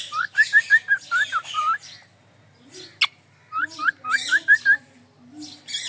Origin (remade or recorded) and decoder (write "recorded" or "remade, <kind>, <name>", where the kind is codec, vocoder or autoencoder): recorded